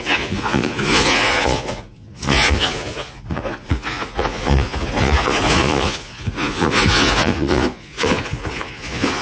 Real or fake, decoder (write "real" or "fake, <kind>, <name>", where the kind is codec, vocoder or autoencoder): fake, vocoder, Vocos